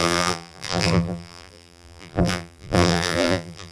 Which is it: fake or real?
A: fake